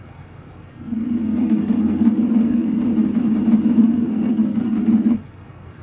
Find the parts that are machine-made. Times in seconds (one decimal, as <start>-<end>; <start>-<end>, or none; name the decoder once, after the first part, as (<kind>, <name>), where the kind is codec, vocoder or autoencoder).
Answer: 0.0-2.9 (codec, SNAC); 3.8-5.8